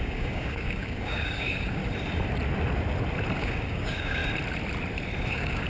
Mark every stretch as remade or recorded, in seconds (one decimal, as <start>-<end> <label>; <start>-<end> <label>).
0.0-1.8 remade; 1.8-3.4 recorded; 3.4-4.2 remade; 4.2-5.3 recorded; 5.3-5.7 remade